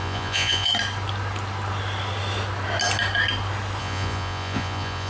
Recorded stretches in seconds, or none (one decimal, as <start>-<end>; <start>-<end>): 0.7-3.8